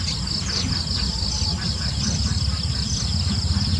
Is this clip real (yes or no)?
yes